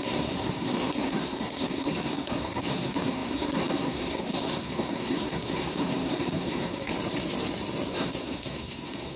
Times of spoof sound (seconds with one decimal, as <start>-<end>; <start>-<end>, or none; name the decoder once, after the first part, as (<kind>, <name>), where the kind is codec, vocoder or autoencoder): 0.0-6.9 (codec, SNAC); 7.9-9.2